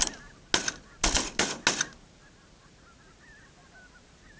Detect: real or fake real